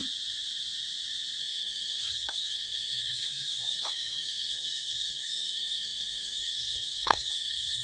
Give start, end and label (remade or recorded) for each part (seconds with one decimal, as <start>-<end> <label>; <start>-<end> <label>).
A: 0.0-1.4 recorded; 1.4-7.8 remade